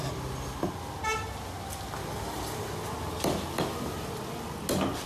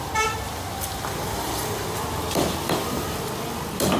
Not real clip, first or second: second